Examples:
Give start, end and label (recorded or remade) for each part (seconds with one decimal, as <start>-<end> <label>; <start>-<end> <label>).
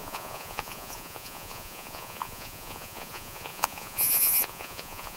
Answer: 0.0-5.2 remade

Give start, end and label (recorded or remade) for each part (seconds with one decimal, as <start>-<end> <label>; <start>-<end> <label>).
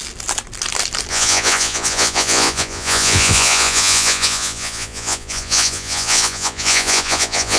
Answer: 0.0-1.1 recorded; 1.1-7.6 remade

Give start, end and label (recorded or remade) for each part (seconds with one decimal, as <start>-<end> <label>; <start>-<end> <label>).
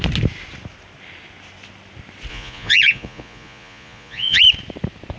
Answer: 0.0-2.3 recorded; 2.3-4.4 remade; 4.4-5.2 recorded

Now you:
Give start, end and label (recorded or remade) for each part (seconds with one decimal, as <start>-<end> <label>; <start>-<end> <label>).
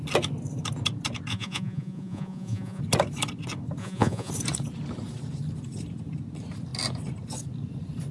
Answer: 0.0-1.3 recorded; 1.3-2.8 remade; 2.8-3.8 recorded; 3.8-4.3 remade; 4.3-8.1 recorded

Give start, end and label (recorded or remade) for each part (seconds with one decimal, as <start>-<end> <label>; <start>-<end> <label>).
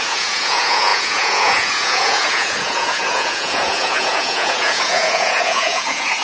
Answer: 0.0-6.2 remade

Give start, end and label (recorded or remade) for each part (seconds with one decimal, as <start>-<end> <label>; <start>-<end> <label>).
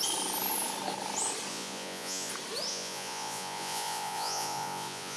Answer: 0.0-1.5 recorded; 1.5-2.3 remade; 2.3-2.7 recorded; 2.7-5.2 remade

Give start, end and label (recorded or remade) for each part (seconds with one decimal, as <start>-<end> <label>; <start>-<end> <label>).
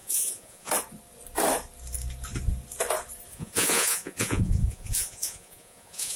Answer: 0.0-0.7 remade; 0.7-3.3 recorded; 3.3-6.2 remade